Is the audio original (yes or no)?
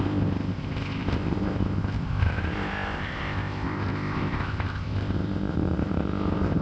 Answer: no